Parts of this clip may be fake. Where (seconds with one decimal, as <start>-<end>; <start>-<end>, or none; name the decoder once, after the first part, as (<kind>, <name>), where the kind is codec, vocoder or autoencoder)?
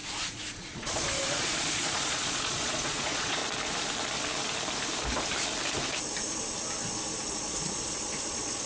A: 0.0-3.4 (vocoder, Vocos); 7.3-8.7